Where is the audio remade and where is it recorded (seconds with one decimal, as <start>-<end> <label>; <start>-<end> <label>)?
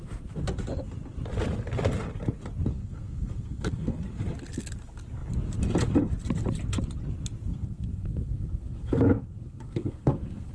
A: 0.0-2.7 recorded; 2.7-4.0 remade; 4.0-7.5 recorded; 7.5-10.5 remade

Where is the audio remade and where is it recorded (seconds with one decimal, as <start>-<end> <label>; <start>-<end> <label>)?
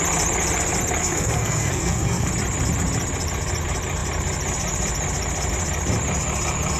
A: 0.0-1.0 recorded; 1.0-2.3 remade; 2.3-6.8 recorded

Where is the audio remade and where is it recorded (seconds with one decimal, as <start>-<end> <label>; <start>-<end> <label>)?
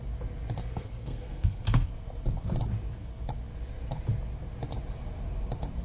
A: 0.0-0.6 recorded; 0.6-1.9 remade; 1.9-5.8 recorded